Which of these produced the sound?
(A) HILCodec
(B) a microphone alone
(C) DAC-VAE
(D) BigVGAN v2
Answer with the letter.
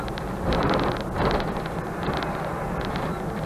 B